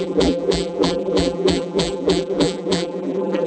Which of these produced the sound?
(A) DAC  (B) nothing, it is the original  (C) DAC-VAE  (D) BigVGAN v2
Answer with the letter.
D